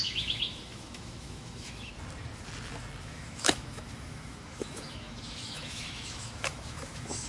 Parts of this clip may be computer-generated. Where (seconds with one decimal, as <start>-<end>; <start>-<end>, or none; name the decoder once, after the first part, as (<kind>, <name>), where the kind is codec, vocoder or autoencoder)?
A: 0.0-1.9 (autoencoder, DAC-VAE); 3.0-7.3